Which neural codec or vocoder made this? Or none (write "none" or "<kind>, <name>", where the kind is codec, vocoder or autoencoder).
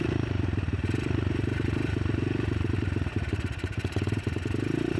vocoder, BigVGAN v2